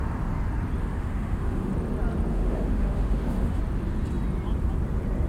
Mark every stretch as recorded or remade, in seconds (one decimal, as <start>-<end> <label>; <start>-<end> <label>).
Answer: 0.0-0.8 recorded; 0.8-1.7 remade; 1.7-2.3 recorded; 2.3-3.6 remade; 3.6-5.3 recorded